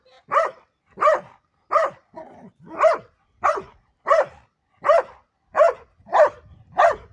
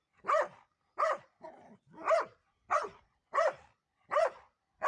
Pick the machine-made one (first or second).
second